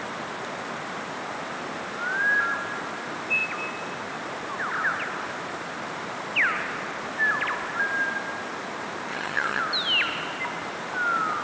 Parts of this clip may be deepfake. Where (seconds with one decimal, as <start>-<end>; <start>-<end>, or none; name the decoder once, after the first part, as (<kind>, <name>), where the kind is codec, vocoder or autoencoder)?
9.1-9.6 (vocoder, HiFi-GAN)

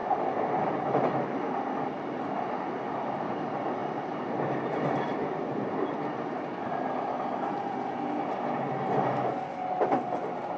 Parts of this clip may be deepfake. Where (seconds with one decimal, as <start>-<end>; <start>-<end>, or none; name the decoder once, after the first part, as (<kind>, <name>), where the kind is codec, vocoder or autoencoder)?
none